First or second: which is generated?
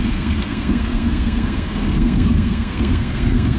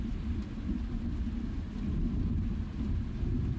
first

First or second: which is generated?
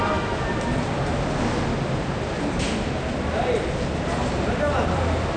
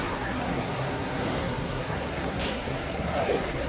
second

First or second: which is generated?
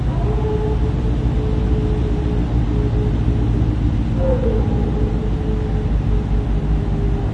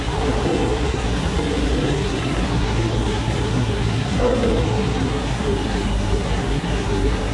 second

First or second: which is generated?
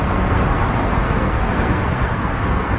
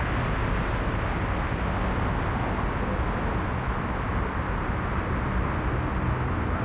first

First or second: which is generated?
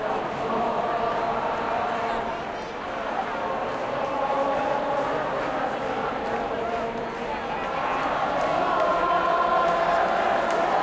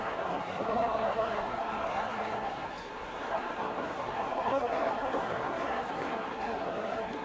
second